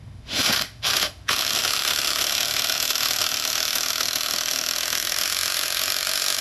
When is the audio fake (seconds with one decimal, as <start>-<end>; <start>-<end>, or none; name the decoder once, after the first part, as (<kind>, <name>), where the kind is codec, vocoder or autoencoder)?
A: 0.0-6.4 (autoencoder, DAC-VAE)